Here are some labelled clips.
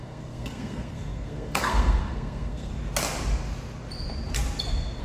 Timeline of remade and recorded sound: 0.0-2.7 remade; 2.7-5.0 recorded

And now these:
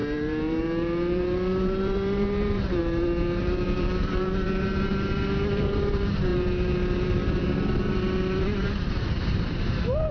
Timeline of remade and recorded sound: 0.0-10.1 remade

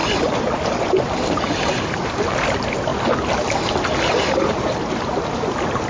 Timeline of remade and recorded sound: 0.0-5.9 recorded

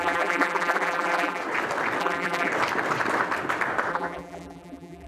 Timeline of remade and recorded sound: 0.0-1.4 remade; 1.4-2.0 recorded; 2.0-2.5 remade; 2.5-3.9 recorded; 3.9-5.1 remade

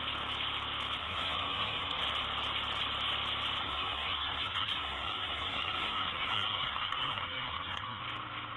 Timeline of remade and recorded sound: 0.0-1.0 recorded; 1.0-2.0 remade; 2.0-3.6 recorded; 3.6-8.0 remade; 8.0-8.6 recorded

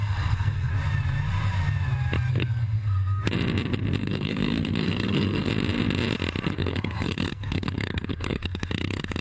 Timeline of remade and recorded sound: 0.0-0.7 remade; 0.7-2.3 recorded; 2.3-3.2 remade; 3.2-4.0 recorded; 4.0-5.5 remade; 5.5-6.5 recorded; 6.5-9.2 remade

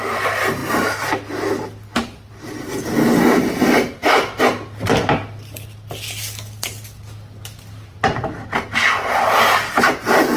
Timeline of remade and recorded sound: 0.0-10.4 recorded